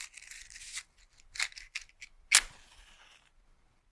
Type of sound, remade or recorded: recorded